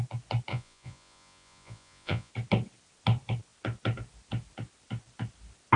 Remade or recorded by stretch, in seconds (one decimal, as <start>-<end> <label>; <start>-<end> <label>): 0.0-0.5 recorded; 0.5-2.3 remade; 2.3-5.8 recorded